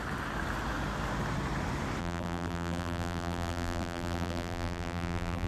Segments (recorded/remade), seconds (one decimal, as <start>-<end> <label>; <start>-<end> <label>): 0.0-2.0 recorded; 2.0-5.5 remade